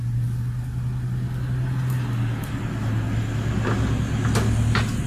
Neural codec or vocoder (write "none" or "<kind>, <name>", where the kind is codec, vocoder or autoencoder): none